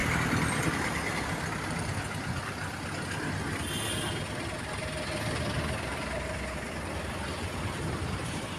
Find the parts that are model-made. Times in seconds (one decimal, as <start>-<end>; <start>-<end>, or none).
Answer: none